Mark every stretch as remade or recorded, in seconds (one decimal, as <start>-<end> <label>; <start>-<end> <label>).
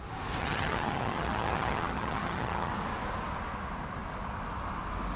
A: 0.0-0.4 recorded; 0.4-2.7 remade; 2.7-5.2 recorded